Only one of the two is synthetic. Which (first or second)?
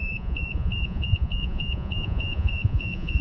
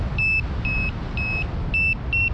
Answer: first